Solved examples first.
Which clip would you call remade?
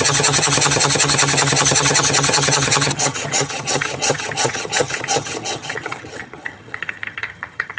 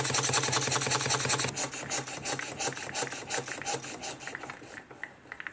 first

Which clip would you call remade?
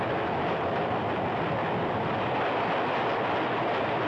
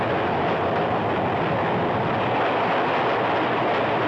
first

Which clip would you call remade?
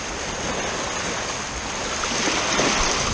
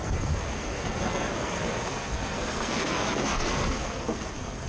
second